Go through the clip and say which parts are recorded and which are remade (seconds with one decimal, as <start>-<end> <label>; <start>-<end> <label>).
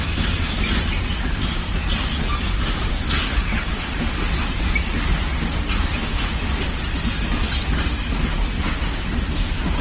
0.0-2.9 recorded; 2.9-3.5 remade; 3.5-9.8 recorded